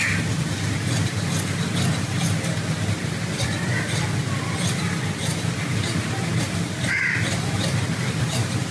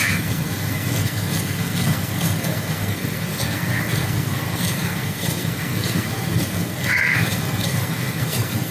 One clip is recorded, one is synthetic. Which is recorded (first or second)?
first